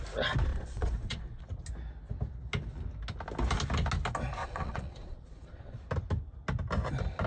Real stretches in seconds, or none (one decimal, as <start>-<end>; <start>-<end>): 0.0-0.5; 1.4-4.4; 5.8-7.3